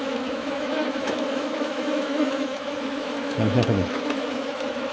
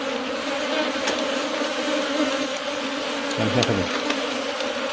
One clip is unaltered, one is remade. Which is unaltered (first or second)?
second